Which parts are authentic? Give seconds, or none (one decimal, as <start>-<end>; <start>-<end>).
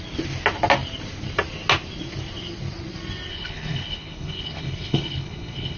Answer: 0.0-3.3